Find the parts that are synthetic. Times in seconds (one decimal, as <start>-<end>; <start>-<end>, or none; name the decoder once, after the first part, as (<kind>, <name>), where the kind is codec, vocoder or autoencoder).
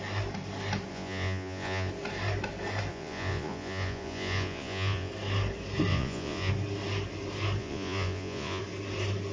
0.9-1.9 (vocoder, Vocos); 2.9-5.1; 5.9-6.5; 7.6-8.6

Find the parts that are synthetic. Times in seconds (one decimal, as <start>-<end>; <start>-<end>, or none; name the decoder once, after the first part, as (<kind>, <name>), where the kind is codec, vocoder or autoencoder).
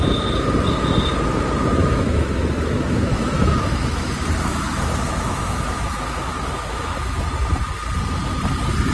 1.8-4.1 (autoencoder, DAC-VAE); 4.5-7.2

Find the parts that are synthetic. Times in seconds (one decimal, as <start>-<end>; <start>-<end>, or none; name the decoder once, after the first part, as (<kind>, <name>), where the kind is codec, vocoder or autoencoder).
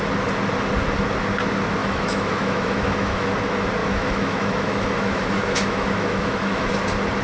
1.8-3.3 (autoencoder, DAC-VAE); 3.8-6.7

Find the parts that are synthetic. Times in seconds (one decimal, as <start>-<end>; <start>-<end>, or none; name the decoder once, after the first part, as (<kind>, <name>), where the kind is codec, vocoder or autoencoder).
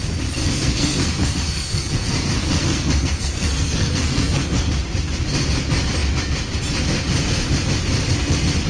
0.4-4.8 (codec, SNAC)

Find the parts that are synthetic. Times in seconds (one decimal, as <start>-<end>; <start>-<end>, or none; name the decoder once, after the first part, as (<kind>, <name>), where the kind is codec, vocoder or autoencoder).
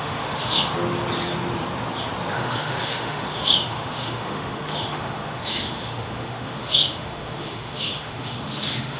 0.0-0.7 (autoencoder, DAC-VAE); 2.3-9.0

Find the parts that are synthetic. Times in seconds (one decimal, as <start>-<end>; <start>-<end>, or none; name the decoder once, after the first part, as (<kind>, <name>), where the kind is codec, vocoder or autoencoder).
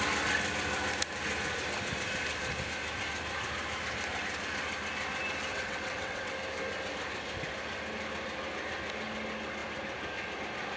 5.5-6.3 (vocoder, WaveNeXt)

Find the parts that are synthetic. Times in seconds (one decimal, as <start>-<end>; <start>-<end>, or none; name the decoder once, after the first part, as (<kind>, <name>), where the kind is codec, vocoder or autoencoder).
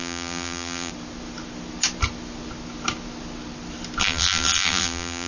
0.0-0.9 (vocoder, BigVGAN v2); 4.0-5.3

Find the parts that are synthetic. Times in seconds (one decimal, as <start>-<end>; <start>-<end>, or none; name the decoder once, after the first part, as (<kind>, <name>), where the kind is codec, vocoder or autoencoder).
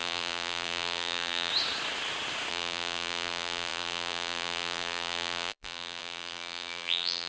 0.0-1.5 (vocoder, BigVGAN v2); 2.5-7.3